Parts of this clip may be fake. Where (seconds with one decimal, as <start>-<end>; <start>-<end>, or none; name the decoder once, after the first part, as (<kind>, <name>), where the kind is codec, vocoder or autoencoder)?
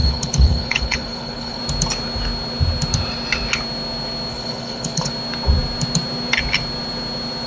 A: 0.0-1.6 (codec, HILCodec); 4.3-5.1